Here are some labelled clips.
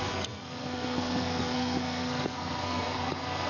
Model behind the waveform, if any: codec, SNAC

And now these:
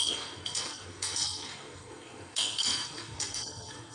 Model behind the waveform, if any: codec, SNAC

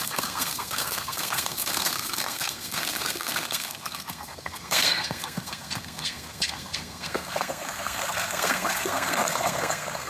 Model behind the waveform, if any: codec, SNAC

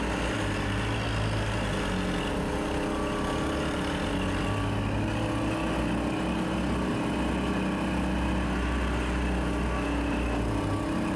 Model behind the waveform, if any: none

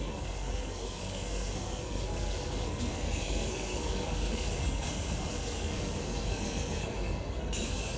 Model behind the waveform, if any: codec, SNAC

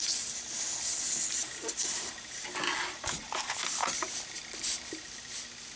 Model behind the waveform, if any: none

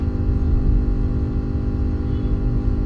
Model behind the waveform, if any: none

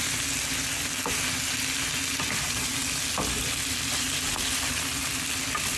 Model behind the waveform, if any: none